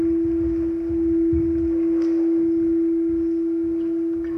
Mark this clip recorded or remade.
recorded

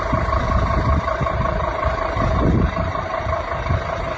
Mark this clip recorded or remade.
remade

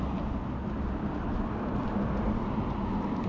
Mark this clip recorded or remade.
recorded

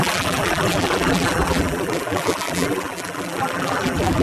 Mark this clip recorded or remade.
remade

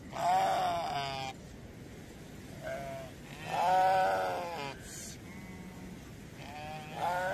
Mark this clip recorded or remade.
recorded